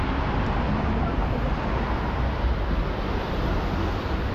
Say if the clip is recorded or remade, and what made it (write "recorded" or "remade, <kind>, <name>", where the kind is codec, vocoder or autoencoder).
recorded